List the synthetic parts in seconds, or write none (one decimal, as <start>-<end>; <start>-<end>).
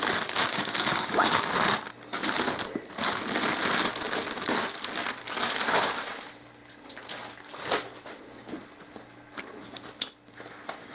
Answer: 0.4-1.5